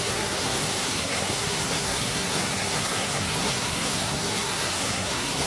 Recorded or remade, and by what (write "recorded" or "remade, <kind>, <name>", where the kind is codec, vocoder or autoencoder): remade, codec, SNAC